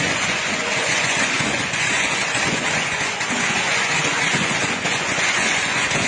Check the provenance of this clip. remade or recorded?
remade